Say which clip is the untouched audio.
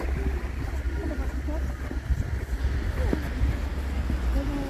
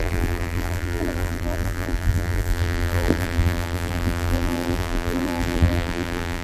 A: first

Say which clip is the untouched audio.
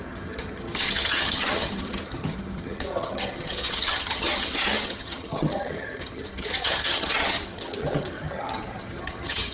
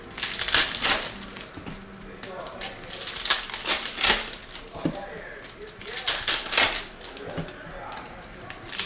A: second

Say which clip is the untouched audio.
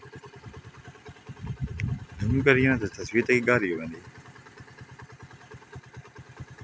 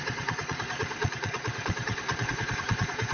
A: first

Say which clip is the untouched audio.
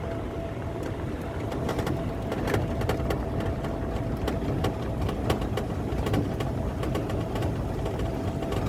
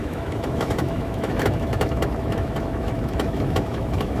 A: first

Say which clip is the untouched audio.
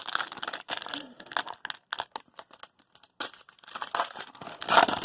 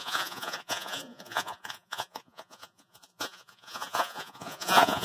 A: first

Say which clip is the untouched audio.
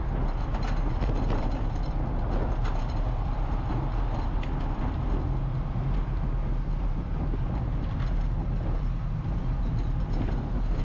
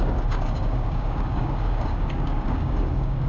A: first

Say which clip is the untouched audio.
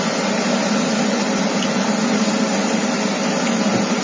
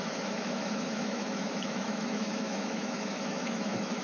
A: first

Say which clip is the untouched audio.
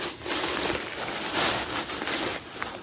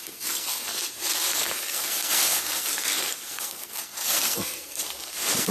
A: first